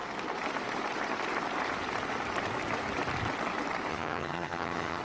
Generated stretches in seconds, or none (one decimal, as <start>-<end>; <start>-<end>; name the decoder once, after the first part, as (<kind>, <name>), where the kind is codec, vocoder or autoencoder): 3.9-5.0 (vocoder, HiFi-GAN)